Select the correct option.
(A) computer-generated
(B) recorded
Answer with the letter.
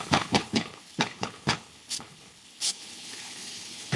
A